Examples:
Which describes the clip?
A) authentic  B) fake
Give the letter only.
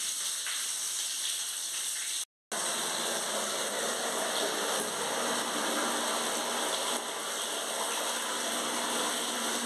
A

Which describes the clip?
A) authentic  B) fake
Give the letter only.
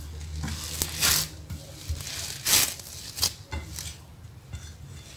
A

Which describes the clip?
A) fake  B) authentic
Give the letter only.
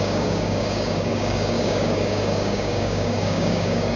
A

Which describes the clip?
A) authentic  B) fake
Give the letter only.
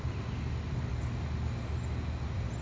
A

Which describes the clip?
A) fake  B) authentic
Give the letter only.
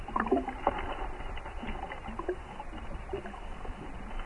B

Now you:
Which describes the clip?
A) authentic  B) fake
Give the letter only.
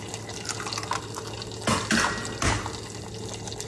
A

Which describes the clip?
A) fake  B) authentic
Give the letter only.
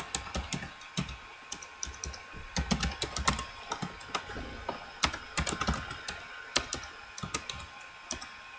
B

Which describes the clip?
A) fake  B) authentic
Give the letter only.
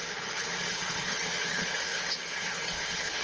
A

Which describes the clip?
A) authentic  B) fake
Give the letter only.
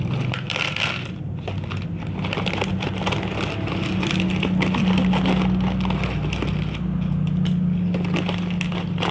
A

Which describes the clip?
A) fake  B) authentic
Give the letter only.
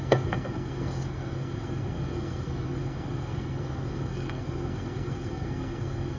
A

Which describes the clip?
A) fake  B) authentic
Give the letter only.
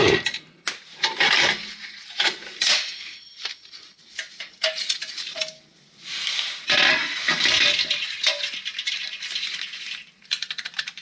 B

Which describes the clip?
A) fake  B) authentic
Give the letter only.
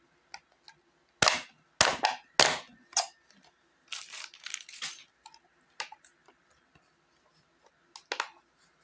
B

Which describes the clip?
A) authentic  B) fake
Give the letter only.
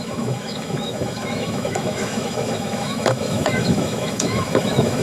B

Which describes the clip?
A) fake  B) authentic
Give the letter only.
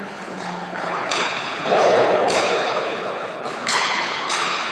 A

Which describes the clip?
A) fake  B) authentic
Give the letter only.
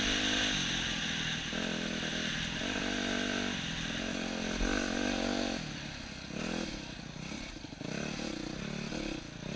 B